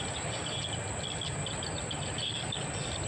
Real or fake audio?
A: real